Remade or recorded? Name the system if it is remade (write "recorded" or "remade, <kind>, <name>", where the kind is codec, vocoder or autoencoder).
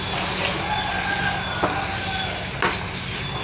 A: recorded